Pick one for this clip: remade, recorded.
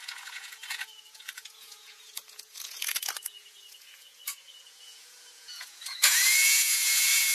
remade